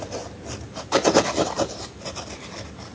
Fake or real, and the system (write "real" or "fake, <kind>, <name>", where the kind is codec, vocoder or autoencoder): real